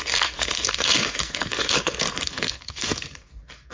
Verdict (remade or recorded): remade